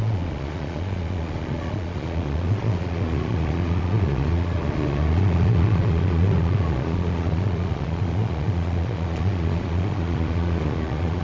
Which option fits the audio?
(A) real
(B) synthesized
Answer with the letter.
B